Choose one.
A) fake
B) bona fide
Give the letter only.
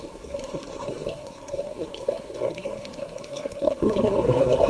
A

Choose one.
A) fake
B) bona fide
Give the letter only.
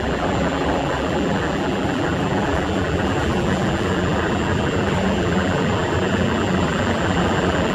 A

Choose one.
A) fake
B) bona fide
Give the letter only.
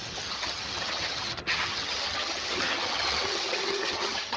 A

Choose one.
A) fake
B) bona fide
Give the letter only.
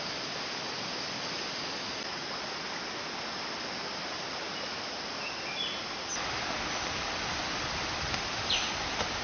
B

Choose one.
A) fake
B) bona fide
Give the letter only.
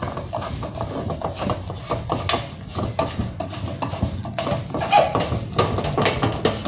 B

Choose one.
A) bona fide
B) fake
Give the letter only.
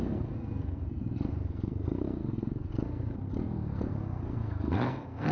B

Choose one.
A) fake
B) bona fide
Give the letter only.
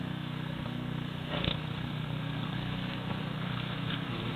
A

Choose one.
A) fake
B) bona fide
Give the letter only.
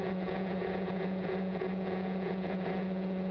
A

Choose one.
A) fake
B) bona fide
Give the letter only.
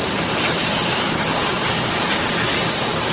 B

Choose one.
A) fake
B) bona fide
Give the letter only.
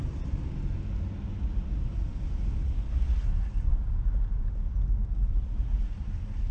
B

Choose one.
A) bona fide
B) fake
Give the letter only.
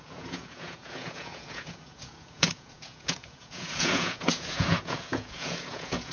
B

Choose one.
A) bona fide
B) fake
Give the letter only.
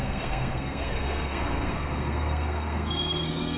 B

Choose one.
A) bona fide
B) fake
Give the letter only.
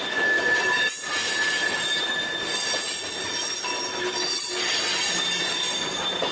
A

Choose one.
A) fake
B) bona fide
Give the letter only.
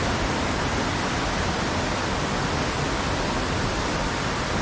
B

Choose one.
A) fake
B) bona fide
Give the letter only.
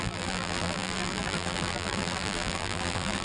A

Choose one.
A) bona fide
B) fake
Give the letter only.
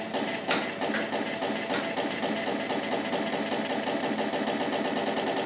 A